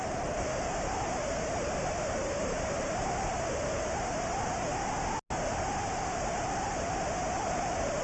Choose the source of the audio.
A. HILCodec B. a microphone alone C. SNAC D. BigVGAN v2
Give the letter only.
B